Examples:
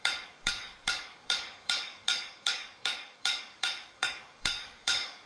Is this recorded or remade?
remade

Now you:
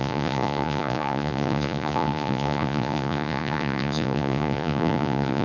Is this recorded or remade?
remade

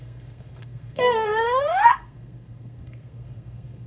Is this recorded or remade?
remade